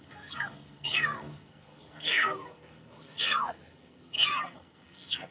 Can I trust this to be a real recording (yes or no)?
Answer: no